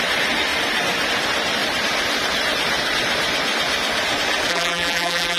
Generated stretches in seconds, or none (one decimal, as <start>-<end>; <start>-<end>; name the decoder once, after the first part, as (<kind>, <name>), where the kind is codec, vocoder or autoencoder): 4.5-5.4 (vocoder, BigVGAN v2)